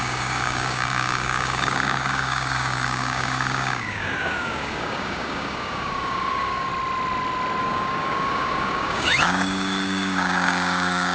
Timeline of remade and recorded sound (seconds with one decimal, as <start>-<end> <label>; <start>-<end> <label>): 0.0-6.7 remade; 6.7-7.6 recorded; 7.6-11.1 remade

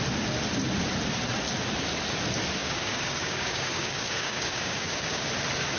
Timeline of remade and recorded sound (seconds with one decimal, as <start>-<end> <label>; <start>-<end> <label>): 0.0-2.6 recorded; 2.6-5.3 remade; 5.3-5.8 recorded

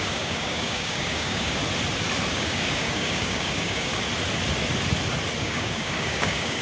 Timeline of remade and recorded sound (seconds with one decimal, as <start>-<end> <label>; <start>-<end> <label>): 0.0-1.6 remade; 1.6-2.3 recorded; 2.3-3.9 remade; 3.9-5.4 recorded; 5.4-6.6 remade

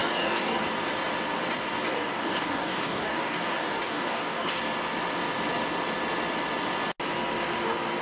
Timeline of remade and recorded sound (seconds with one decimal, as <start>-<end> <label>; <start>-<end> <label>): 0.0-0.6 remade; 0.6-1.9 recorded; 1.9-4.5 remade; 4.5-8.0 recorded